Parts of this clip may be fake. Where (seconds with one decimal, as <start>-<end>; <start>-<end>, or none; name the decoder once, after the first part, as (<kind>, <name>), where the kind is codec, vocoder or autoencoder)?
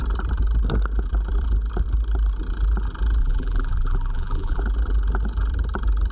3.2-4.6 (vocoder, BigVGAN v2)